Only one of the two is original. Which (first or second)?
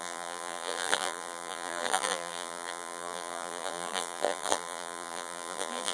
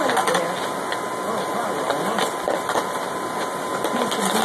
second